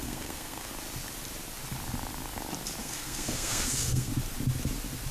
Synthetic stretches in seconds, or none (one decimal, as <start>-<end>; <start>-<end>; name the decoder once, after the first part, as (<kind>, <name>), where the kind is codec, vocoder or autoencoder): 0.0-0.7 (codec, SNAC); 2.8-4.1